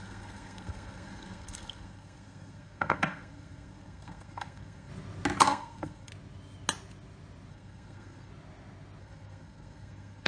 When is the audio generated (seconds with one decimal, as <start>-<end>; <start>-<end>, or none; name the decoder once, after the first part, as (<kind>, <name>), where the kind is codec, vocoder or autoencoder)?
0.0-4.9 (codec, SNAC); 5.4-6.1; 7.5-8.3; 9.0-10.3